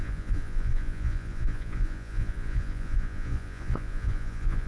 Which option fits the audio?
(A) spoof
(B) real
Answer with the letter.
A